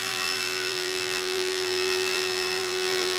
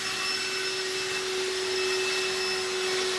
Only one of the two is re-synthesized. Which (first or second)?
first